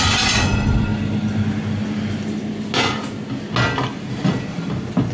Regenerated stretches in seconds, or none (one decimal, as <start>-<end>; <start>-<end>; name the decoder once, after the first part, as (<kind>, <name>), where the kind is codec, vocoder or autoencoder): 0.0-0.9 (vocoder, BigVGAN v2); 4.0-5.1